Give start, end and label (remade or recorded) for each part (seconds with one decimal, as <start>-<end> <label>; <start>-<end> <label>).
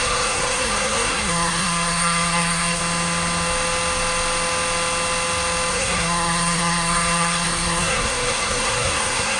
0.0-2.8 remade; 2.8-5.7 recorded; 5.7-9.4 remade